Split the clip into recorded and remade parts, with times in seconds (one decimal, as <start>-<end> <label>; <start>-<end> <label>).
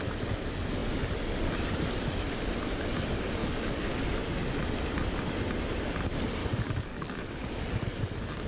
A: 0.0-3.4 recorded; 3.4-4.0 remade; 4.0-6.4 recorded; 6.4-8.0 remade; 8.0-8.5 recorded